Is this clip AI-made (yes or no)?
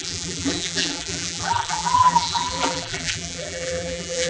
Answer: yes